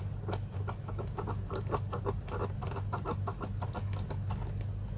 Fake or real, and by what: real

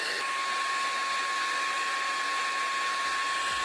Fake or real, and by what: real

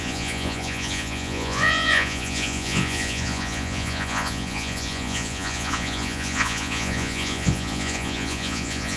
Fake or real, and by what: fake, vocoder, Vocos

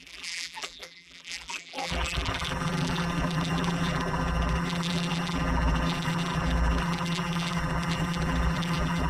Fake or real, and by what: fake, vocoder, BigVGAN v2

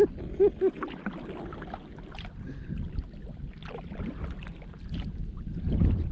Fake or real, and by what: real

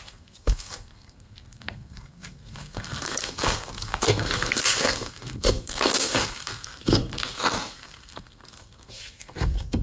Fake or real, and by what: fake, codec, SNAC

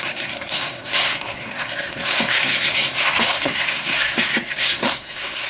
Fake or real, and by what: fake, codec, SNAC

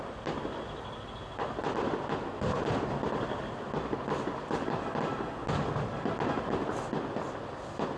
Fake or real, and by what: real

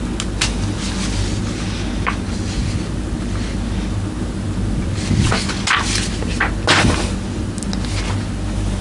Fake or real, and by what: real